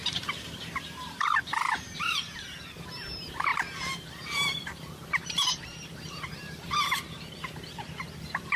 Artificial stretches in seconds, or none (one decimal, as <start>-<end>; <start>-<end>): 0.0-8.6